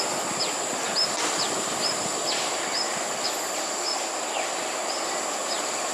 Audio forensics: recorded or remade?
recorded